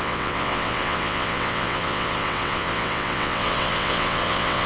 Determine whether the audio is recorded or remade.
remade